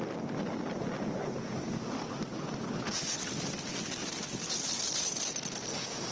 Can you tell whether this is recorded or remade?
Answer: recorded